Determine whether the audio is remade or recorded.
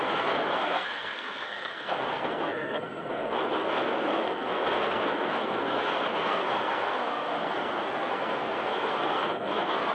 remade